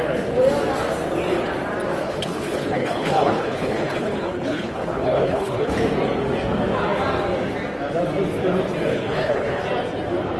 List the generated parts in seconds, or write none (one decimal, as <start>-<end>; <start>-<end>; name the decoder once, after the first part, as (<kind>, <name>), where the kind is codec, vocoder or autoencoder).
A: 2.0-5.7 (codec, HILCodec); 8.9-9.6